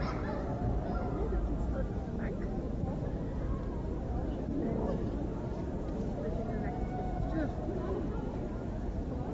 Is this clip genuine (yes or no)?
no